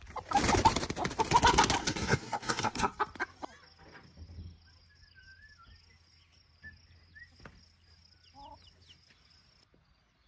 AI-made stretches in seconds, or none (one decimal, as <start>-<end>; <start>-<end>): 1.8-3.0